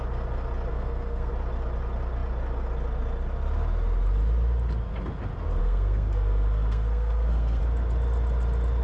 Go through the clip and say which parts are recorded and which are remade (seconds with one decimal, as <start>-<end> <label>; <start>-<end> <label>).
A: 0.0-0.7 recorded; 0.7-1.3 remade; 1.3-5.6 recorded; 5.6-7.6 remade; 7.6-8.8 recorded